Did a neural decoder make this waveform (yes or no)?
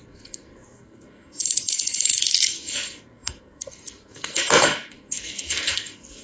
yes